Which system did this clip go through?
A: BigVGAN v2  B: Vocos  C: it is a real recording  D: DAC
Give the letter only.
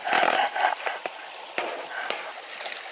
C